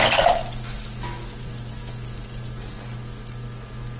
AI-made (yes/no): no